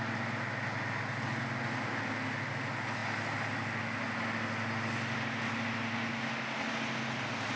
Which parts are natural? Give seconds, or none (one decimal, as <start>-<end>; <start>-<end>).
0.0-7.6